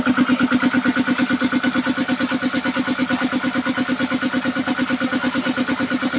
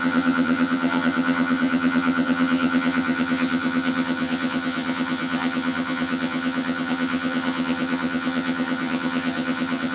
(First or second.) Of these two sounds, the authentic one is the first